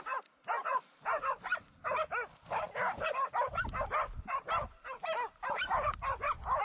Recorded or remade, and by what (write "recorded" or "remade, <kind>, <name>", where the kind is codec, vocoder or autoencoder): recorded